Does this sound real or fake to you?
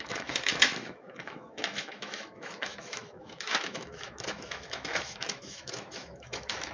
fake